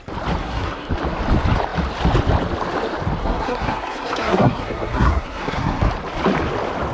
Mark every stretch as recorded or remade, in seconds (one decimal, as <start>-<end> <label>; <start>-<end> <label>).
0.0-0.4 recorded; 0.4-0.9 remade; 0.9-3.2 recorded; 3.2-5.9 remade; 5.9-6.9 recorded